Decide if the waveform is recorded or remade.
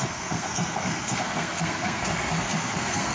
remade